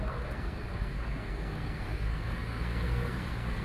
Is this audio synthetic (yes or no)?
yes